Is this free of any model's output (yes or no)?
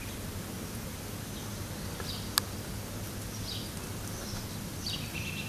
yes